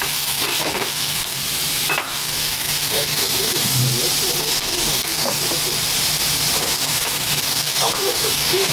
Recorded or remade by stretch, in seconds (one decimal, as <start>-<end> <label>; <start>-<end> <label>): 0.0-1.4 remade; 1.4-2.0 recorded; 2.0-3.8 remade; 3.8-4.4 recorded; 4.4-5.4 remade; 5.4-6.6 recorded; 6.6-8.7 remade